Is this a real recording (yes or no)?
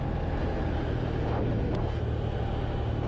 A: yes